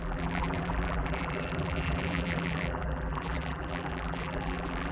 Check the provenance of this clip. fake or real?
fake